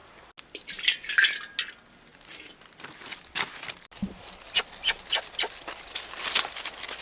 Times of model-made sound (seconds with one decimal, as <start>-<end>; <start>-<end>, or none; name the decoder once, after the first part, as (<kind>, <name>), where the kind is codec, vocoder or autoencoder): 2.1-3.0 (vocoder, BigVGAN v2)